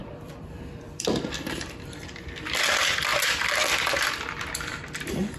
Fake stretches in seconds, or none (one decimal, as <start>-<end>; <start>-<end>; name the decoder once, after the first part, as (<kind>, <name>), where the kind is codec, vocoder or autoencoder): 0.0-2.4 (vocoder, BigVGAN v2)